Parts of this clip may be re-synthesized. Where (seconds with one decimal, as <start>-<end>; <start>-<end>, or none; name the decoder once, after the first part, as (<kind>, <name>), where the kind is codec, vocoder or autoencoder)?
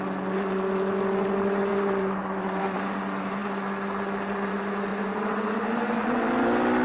1.7-2.6 (vocoder, BigVGAN v2); 4.9-6.2